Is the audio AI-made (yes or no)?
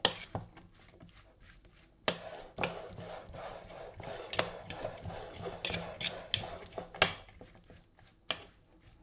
no